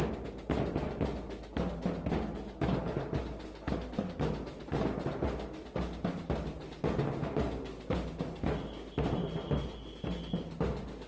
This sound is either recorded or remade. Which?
recorded